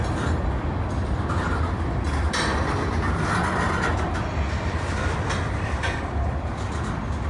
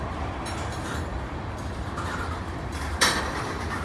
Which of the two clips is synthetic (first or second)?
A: second